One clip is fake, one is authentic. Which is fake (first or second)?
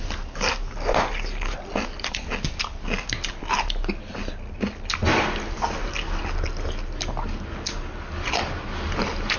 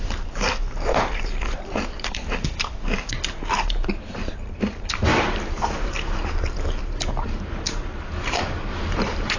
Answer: second